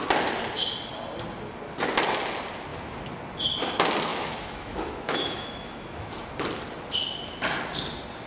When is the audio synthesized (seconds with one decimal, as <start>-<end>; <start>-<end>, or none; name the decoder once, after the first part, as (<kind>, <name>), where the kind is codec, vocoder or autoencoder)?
4.1-6.1 (autoencoder, DAC-VAE)